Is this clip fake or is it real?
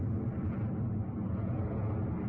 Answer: real